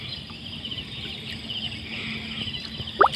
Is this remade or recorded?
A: recorded